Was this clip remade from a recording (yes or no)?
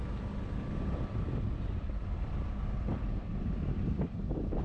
no